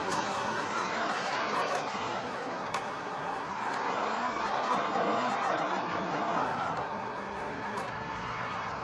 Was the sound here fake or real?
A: fake